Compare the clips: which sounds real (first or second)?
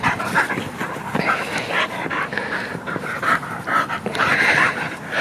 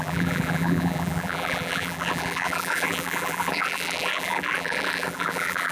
first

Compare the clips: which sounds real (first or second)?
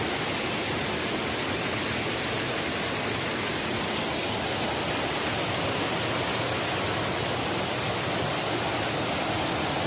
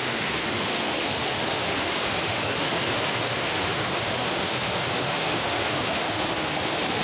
first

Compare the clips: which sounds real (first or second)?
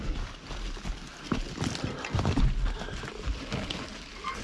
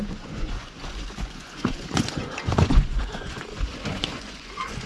first